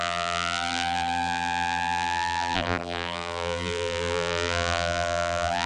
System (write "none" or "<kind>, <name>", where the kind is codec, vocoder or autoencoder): vocoder, BigVGAN v2